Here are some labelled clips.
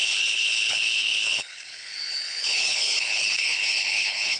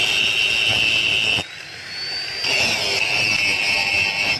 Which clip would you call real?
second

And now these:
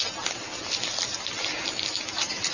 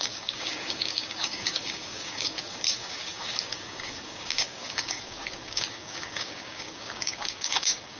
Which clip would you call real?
first